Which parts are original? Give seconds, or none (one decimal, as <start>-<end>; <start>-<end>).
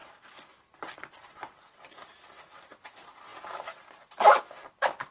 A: 0.0-5.1